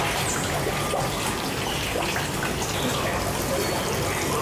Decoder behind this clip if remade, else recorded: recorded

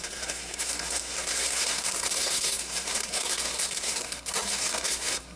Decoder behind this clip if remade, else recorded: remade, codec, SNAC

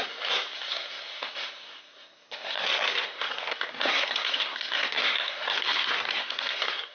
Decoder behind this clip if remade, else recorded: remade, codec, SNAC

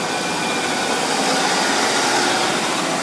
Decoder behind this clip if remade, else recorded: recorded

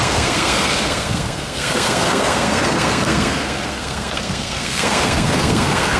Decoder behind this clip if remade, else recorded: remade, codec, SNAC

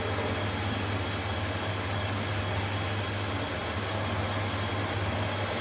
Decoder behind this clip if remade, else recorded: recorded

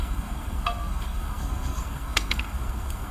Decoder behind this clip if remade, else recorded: remade, codec, SNAC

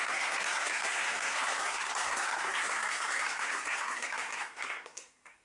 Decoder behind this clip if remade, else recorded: remade, codec, SNAC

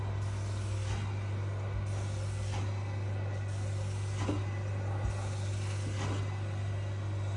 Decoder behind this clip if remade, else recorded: recorded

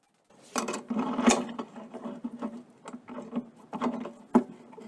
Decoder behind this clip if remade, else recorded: recorded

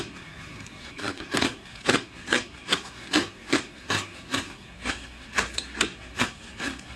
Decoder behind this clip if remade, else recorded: remade, codec, SNAC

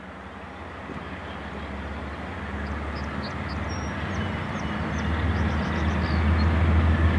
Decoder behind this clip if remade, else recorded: recorded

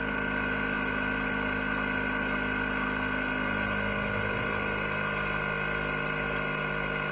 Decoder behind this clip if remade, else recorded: recorded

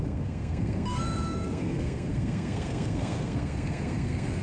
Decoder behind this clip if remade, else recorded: remade, codec, SNAC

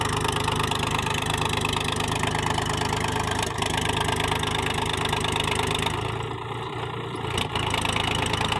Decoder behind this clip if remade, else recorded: recorded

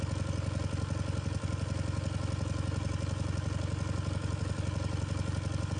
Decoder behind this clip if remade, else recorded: recorded